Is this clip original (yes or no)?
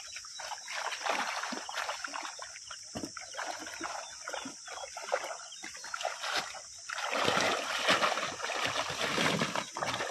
yes